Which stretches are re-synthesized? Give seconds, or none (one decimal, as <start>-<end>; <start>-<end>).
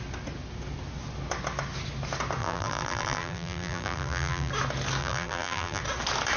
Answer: 2.4-4.5; 5.0-5.8